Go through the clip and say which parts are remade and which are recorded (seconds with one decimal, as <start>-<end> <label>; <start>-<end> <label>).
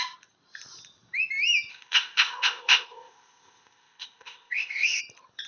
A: 0.0-1.7 recorded; 1.7-5.0 remade; 5.0-5.5 recorded